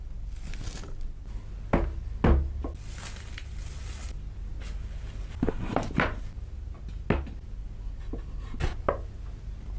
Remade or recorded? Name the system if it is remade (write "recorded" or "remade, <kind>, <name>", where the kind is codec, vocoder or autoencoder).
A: recorded